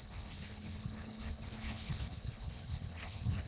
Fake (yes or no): yes